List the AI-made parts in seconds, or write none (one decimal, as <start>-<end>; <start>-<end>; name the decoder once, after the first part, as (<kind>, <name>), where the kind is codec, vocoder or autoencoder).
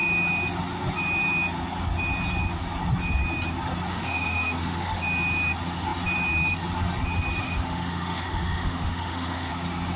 3.9-5.0 (autoencoder, DAC-VAE); 7.4-9.5